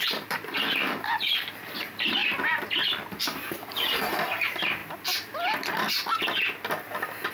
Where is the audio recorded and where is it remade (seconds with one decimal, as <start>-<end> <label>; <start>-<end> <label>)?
0.0-2.2 remade; 2.2-3.1 recorded; 3.1-4.8 remade; 4.8-7.3 recorded